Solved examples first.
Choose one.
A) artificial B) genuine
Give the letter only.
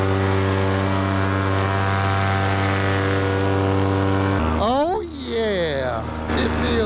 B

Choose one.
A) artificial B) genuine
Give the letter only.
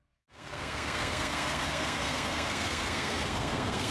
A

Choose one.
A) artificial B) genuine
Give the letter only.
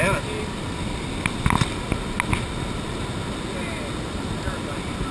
B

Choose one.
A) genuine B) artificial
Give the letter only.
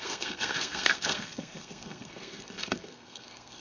B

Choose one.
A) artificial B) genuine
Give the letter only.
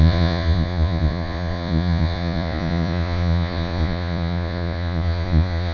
A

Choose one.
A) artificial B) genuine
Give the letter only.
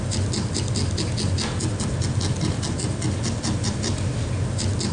B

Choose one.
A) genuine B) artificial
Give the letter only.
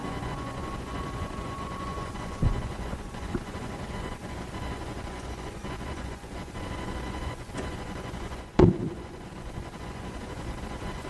B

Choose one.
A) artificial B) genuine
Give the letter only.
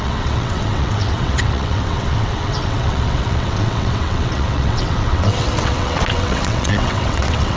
A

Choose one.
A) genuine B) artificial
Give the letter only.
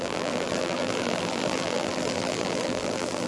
B